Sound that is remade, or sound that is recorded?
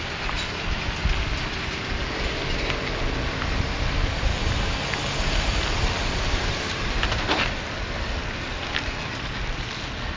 recorded